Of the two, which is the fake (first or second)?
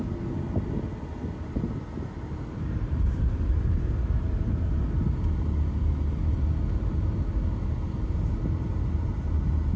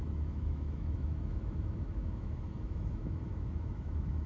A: second